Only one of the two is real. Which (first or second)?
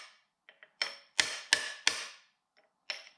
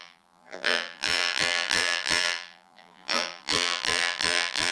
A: first